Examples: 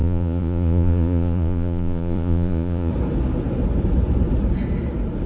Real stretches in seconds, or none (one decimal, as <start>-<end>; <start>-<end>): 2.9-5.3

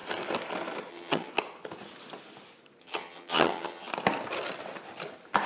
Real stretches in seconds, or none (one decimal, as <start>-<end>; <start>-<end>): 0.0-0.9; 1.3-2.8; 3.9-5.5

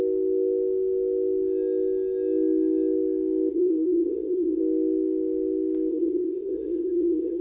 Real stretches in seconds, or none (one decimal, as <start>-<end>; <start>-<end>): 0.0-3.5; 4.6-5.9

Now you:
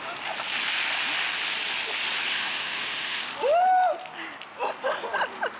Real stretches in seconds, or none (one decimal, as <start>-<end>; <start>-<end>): 0.0-2.3; 3.2-5.6

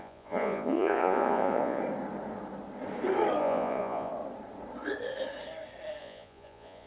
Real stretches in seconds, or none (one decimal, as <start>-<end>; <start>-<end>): 1.8-3.4; 4.1-6.0

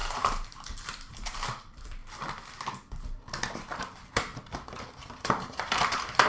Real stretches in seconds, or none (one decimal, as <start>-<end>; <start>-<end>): 2.0-3.7; 4.3-5.2